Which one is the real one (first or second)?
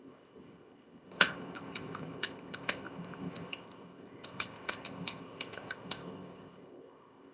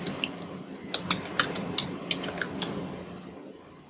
second